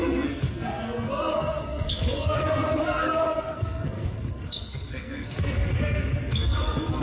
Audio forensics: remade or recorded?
remade